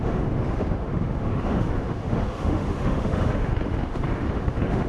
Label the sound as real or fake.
fake